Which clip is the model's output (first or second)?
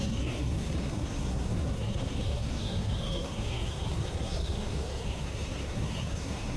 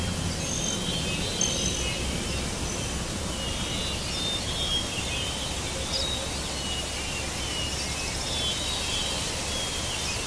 first